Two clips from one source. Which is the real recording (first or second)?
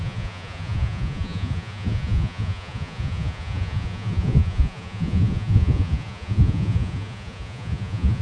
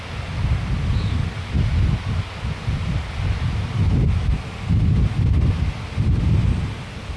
second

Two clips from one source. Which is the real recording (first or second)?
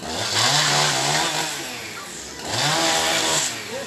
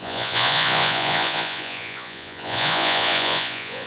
first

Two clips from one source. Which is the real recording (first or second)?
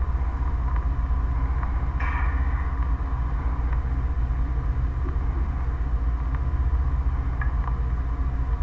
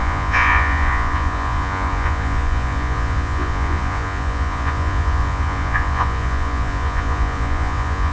first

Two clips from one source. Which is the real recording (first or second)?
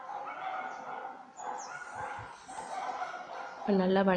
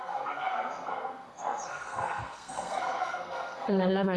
first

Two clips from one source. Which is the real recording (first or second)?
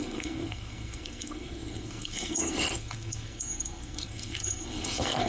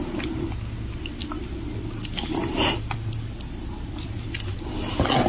second